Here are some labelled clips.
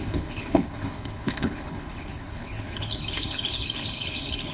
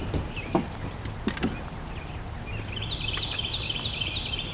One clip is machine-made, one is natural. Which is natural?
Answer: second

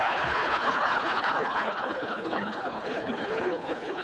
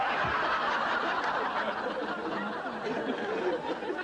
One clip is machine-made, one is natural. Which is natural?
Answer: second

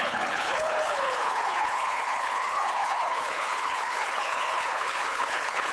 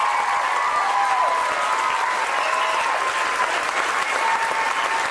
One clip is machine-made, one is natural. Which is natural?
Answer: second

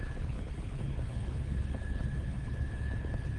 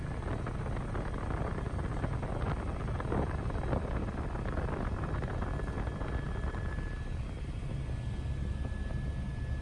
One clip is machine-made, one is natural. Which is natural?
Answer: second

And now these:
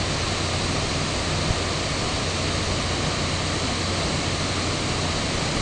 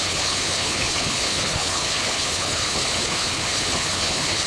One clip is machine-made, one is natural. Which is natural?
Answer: first